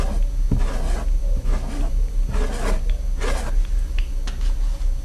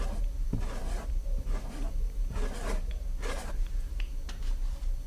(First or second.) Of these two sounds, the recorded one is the first